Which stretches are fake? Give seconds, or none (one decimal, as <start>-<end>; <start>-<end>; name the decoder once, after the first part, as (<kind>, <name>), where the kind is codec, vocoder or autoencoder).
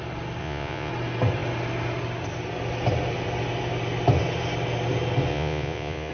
0.4-0.9 (vocoder, Vocos); 5.3-6.1